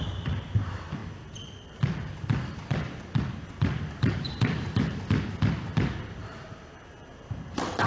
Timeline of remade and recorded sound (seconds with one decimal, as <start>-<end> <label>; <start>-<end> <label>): 0.0-6.2 remade; 6.2-6.7 recorded; 6.7-7.9 remade